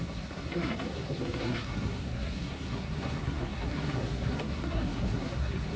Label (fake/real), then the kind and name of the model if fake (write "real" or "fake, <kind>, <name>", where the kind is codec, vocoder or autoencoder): fake, codec, SNAC